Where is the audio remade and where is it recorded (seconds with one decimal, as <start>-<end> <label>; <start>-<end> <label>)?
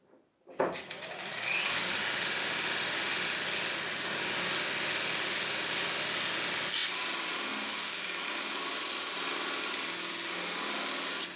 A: 0.0-11.4 recorded